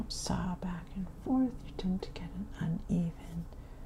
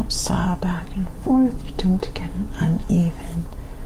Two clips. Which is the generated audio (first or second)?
second